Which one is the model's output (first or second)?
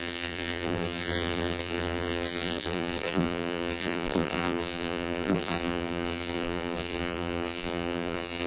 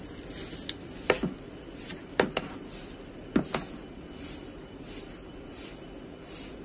first